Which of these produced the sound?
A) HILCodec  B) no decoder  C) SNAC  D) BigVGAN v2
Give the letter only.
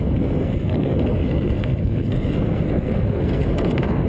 C